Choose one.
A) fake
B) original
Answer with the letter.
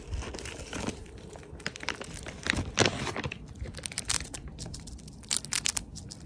A